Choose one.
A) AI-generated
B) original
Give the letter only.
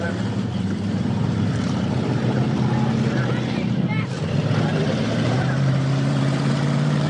A